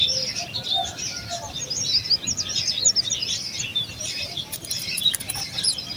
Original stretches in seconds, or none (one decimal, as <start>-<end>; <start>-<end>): 0.0-3.7; 5.6-6.0